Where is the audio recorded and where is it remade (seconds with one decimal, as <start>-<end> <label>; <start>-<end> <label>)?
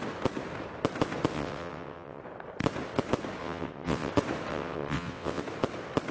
0.0-1.3 recorded; 1.3-2.2 remade; 2.2-3.4 recorded; 3.4-4.1 remade; 4.1-4.5 recorded; 4.5-5.4 remade; 5.4-6.1 recorded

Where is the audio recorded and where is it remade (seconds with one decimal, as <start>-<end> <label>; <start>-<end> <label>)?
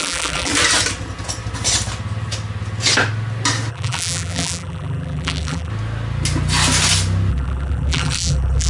0.0-0.5 remade; 0.5-3.7 recorded; 3.7-5.7 remade; 5.7-7.3 recorded; 7.3-8.7 remade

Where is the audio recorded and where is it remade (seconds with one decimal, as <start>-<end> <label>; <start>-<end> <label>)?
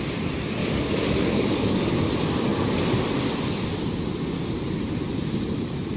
0.0-0.6 recorded; 0.6-2.1 remade; 2.1-6.0 recorded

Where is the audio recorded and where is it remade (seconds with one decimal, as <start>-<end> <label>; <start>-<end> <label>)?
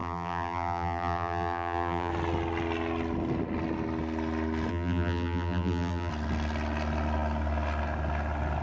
0.0-2.1 remade; 2.1-4.7 recorded; 4.7-6.1 remade; 6.1-8.6 recorded